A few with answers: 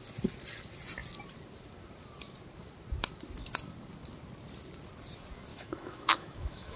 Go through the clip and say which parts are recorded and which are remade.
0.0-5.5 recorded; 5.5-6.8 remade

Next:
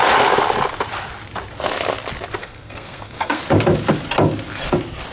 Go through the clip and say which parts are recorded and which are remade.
0.0-2.4 recorded; 2.4-3.4 remade; 3.4-5.1 recorded

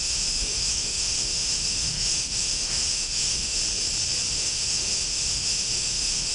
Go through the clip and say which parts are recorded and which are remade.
0.0-3.6 remade; 3.6-4.3 recorded; 4.3-6.3 remade

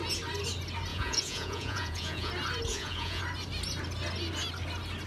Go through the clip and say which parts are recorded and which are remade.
0.0-0.9 recorded; 0.9-2.3 remade; 2.3-2.7 recorded; 2.7-3.2 remade; 3.2-5.1 recorded

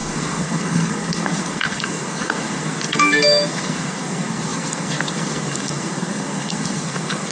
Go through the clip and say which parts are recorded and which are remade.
0.0-7.3 remade

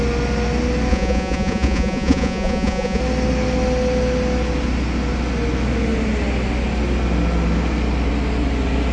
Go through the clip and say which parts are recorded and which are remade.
0.0-0.9 recorded; 0.9-3.0 remade; 3.0-8.9 recorded

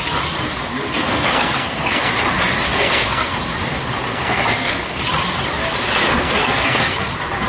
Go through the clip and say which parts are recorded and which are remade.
0.0-0.8 recorded; 0.8-2.1 remade; 2.1-2.7 recorded; 2.7-3.4 remade; 3.4-4.1 recorded; 4.1-5.0 remade; 5.0-6.1 recorded; 6.1-7.1 remade; 7.1-7.5 recorded

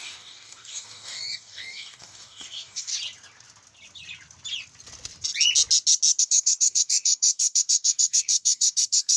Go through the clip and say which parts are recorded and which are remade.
0.0-2.9 remade; 2.9-6.2 recorded; 6.2-9.2 remade